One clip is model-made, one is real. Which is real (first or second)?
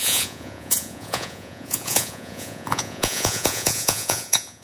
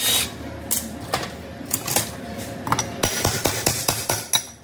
second